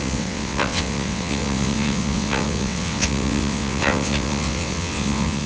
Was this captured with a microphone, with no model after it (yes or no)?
no